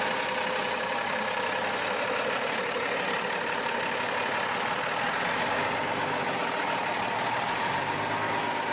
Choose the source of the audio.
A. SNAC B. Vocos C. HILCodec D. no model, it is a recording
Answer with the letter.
D